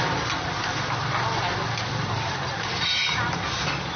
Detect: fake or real fake